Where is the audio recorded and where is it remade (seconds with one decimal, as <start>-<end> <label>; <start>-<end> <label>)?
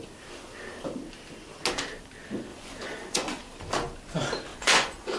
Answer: 0.0-2.5 recorded; 2.5-3.4 remade; 3.4-4.5 recorded; 4.5-5.2 remade